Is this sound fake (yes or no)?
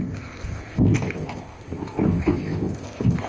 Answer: yes